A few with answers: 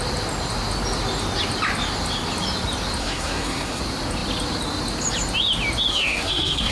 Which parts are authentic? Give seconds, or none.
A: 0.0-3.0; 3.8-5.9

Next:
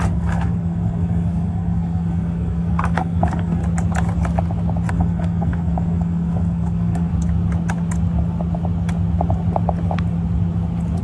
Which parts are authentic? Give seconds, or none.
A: 3.6-4.9; 7.1-11.0

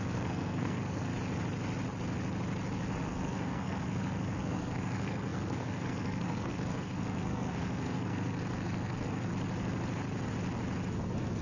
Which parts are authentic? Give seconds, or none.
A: 1.1-3.0; 9.3-11.4

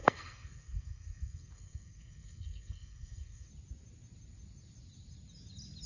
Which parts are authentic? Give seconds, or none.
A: 3.5-5.9